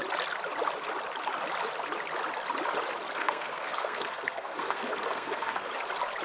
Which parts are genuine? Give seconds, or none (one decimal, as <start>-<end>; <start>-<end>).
0.0-3.2; 5.7-6.2